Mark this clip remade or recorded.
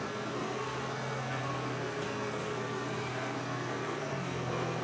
remade